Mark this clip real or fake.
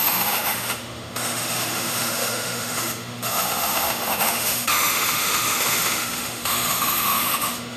fake